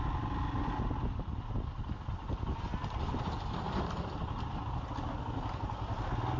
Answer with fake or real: real